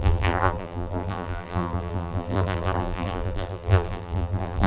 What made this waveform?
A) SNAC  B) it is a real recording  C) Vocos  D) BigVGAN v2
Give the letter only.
D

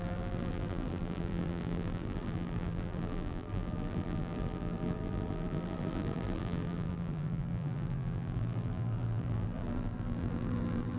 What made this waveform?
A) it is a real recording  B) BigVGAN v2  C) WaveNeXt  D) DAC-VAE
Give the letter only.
B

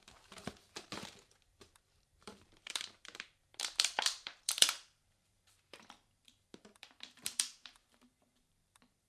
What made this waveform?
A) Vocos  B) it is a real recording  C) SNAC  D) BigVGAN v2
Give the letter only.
D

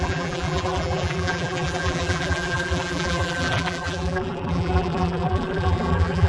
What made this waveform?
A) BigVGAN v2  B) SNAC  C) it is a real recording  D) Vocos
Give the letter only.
A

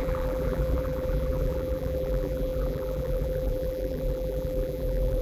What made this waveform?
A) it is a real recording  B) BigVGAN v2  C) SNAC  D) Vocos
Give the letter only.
B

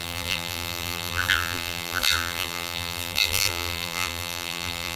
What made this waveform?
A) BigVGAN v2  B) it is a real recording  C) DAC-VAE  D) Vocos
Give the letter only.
A